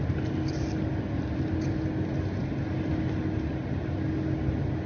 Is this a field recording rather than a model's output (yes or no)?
yes